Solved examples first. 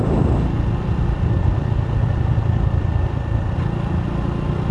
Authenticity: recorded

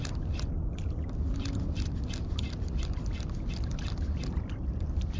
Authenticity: recorded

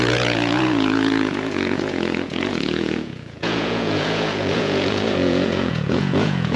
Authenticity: remade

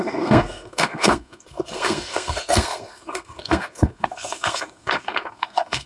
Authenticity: remade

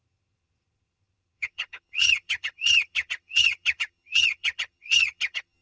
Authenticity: remade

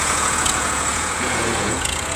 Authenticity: remade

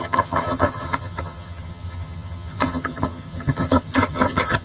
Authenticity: remade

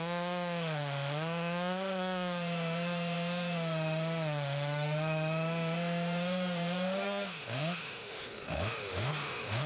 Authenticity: remade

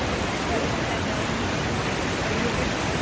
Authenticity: recorded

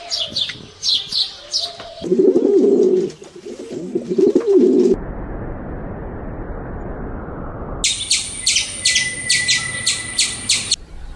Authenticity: recorded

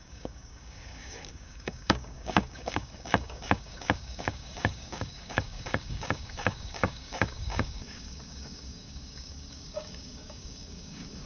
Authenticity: remade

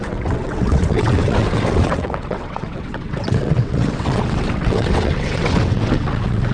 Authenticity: remade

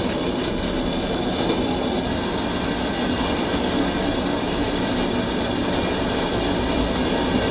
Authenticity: recorded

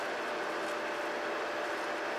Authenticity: recorded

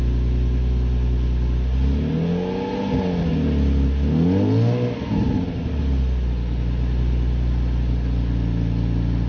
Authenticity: recorded